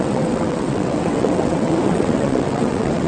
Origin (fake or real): fake